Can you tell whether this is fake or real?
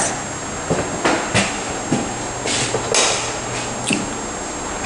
real